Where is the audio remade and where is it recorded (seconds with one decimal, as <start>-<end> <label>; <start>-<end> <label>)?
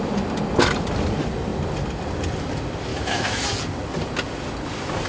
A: 0.0-2.9 recorded; 2.9-3.5 remade; 3.5-5.1 recorded